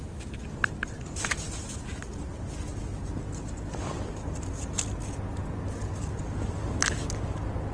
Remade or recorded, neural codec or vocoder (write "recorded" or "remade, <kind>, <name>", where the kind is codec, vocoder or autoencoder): recorded